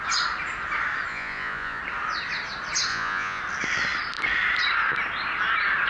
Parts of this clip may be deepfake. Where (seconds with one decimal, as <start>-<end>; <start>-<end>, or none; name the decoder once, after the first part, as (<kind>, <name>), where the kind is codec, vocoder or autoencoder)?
1.1-1.8 (vocoder, Vocos); 2.9-3.4